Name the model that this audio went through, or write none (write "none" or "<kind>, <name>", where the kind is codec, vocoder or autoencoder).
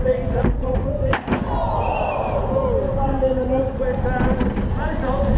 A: none